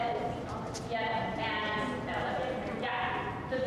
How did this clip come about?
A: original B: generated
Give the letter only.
A